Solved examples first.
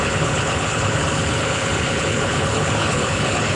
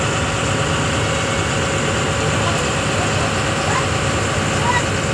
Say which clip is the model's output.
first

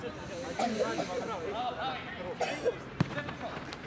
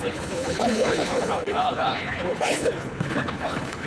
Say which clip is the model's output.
second